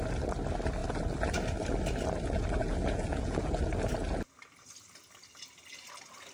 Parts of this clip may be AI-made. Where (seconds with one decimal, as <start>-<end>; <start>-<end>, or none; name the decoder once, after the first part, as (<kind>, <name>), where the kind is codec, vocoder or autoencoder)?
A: 2.6-3.6 (vocoder, Vocos)